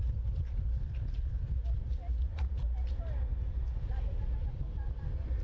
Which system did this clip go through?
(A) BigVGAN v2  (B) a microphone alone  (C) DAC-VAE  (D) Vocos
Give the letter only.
B